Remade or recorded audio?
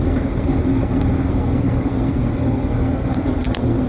remade